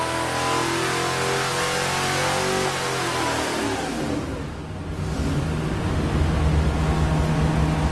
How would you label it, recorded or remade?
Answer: recorded